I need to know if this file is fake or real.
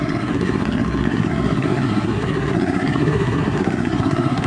fake